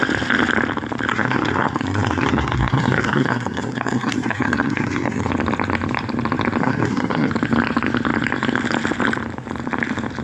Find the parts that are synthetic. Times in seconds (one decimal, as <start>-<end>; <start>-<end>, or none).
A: 1.1-5.3; 6.6-7.3